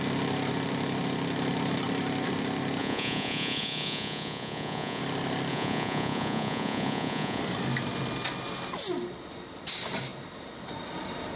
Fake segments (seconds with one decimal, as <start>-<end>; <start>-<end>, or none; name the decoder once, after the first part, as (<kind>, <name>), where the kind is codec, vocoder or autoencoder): 2.8-5.0 (vocoder, Vocos); 5.5-7.4